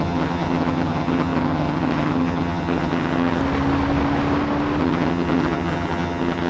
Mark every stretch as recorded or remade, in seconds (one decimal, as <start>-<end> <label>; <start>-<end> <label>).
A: 0.0-3.4 remade; 3.4-4.8 recorded; 4.8-6.5 remade